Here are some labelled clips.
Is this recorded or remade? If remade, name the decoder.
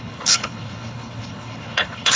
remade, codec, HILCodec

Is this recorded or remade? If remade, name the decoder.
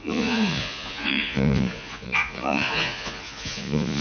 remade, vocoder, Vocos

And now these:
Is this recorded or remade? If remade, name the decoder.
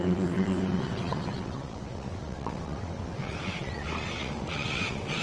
remade, vocoder, WaveNeXt